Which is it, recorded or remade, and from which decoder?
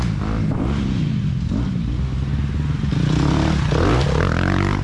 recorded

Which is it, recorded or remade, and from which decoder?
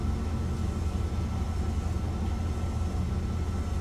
recorded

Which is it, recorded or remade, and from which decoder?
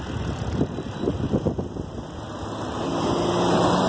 recorded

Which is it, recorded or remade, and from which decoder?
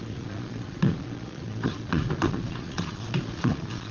remade, vocoder, Vocos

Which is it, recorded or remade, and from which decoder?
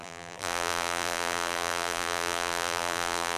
remade, vocoder, BigVGAN v2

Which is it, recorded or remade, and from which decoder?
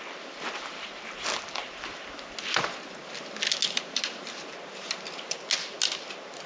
recorded